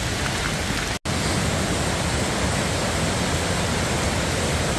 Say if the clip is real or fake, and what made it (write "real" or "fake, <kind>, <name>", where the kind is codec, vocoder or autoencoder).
real